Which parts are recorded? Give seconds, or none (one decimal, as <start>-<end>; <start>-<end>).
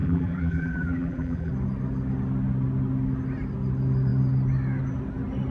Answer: 1.5-5.5